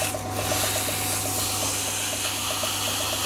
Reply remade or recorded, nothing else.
recorded